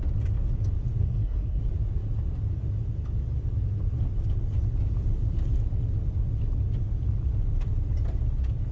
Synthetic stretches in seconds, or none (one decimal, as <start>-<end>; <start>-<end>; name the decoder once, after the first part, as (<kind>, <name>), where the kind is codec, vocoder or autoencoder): 1.0-1.6 (codec, SNAC)